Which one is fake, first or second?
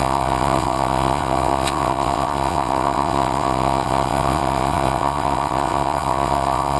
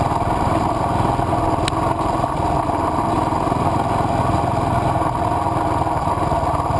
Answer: first